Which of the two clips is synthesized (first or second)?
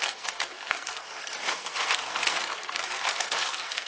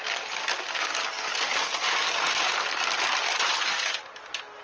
first